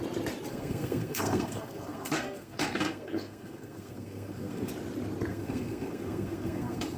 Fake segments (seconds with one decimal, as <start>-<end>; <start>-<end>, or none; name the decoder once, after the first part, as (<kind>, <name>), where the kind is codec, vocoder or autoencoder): 0.5-4.7 (codec, SNAC); 5.3-7.0